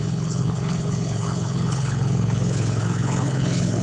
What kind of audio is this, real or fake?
fake